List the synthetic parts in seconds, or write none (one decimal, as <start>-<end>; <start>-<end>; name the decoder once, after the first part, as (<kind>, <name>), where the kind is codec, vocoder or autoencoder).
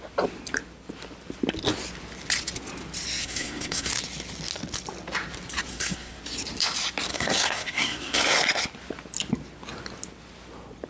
3.2-3.9 (codec, SNAC); 5.7-6.2; 7.1-8.2